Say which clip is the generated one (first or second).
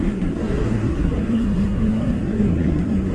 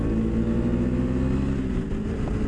first